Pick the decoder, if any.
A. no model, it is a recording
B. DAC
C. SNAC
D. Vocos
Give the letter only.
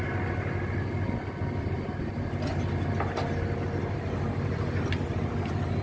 A